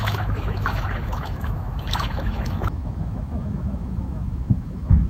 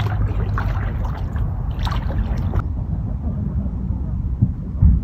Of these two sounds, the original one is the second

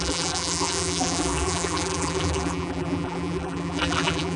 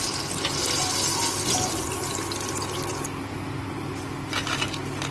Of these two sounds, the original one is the second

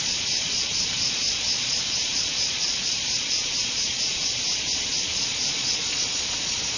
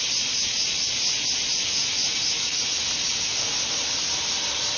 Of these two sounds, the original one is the second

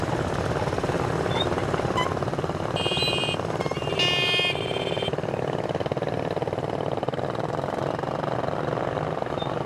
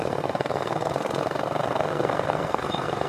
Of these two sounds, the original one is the first